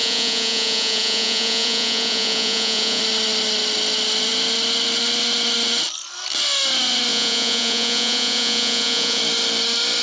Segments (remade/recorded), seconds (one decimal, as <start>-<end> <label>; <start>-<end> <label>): 0.0-3.0 remade; 3.0-7.1 recorded; 7.1-9.2 remade; 9.2-10.0 recorded